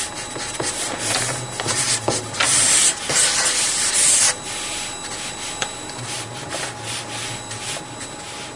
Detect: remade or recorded recorded